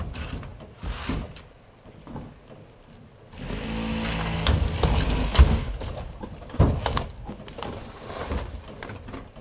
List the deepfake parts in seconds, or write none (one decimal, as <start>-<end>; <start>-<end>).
none